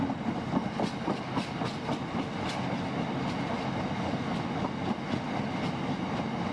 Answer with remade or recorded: recorded